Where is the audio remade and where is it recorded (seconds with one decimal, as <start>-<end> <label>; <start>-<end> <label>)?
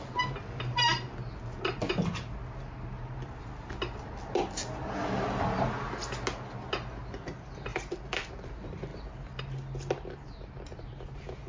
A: 0.0-7.7 recorded; 7.7-8.3 remade; 8.3-8.9 recorded; 8.9-9.4 remade; 9.4-11.5 recorded